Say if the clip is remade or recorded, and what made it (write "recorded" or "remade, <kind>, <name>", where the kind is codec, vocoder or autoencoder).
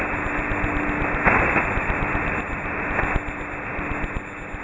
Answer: recorded